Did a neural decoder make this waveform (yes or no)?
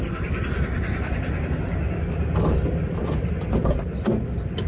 no